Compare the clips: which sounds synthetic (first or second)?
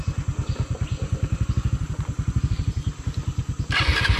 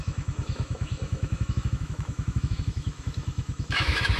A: second